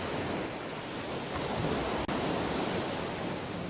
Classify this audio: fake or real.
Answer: real